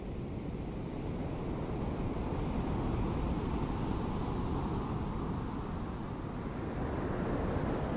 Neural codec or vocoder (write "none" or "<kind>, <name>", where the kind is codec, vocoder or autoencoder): none